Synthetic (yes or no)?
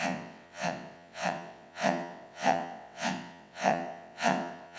yes